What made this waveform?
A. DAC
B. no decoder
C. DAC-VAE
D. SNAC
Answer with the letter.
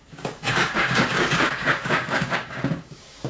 A